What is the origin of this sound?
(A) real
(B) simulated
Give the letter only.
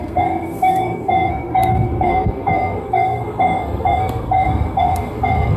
B